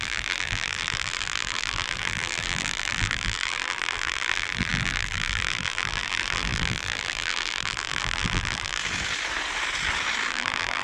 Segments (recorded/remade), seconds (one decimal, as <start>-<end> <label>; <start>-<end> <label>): 0.0-8.8 remade; 8.8-10.3 recorded; 10.3-10.8 remade